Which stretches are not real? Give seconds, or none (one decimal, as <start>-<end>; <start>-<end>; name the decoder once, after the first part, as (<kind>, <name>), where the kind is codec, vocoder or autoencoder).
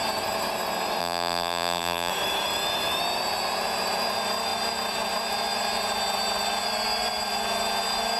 1.0-2.1 (vocoder, BigVGAN v2)